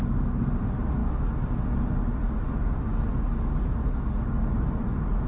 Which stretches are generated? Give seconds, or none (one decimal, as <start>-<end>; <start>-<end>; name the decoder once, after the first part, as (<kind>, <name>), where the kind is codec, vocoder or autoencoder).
none